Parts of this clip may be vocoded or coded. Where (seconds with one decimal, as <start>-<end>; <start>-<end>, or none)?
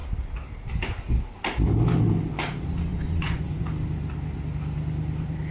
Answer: 2.9-3.7